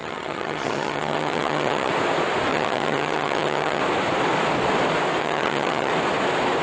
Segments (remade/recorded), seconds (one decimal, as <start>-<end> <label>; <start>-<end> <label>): 0.0-1.9 remade; 1.9-2.5 recorded; 2.5-3.8 remade; 3.8-5.2 recorded; 5.2-5.9 remade; 5.9-6.6 recorded